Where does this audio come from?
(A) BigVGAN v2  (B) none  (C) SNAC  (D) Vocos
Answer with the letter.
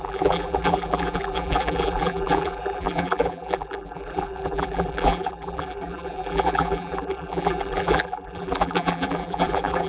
A